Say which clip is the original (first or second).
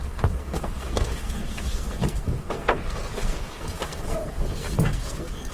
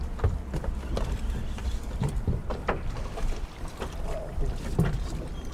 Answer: second